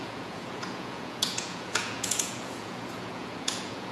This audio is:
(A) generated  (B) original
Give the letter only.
A